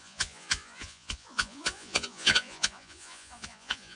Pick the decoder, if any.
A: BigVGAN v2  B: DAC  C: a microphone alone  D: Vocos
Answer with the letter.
D